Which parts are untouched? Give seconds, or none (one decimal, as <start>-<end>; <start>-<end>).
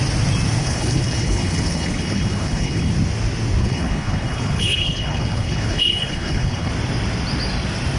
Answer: 0.0-0.6; 2.9-3.6; 6.7-8.0